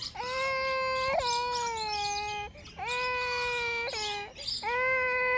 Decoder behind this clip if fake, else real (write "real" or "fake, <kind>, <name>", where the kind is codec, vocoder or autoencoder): real